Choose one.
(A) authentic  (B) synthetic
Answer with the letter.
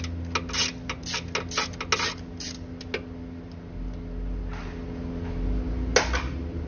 A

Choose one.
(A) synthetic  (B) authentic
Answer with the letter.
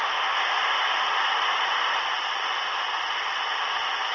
B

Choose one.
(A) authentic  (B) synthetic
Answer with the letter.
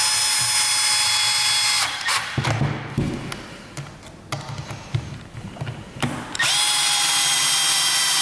A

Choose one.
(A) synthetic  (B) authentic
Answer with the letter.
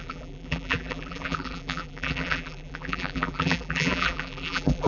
A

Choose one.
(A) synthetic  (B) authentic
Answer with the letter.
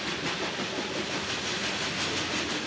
B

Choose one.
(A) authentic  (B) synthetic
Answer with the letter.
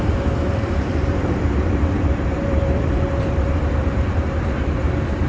B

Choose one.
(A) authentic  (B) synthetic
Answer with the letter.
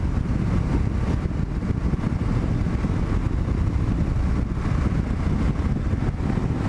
A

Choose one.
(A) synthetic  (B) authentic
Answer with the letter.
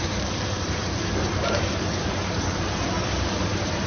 A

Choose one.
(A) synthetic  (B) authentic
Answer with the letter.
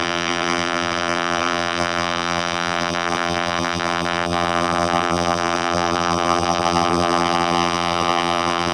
A